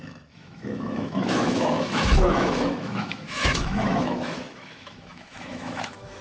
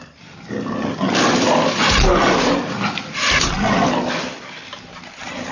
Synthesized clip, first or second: first